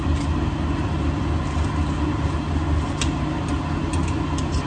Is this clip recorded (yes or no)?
yes